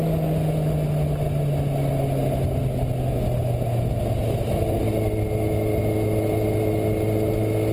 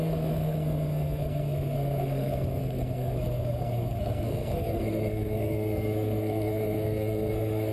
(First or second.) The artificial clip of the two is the second